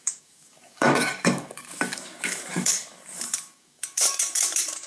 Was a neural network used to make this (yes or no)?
yes